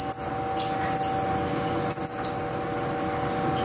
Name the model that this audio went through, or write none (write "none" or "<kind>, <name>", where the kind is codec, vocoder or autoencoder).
none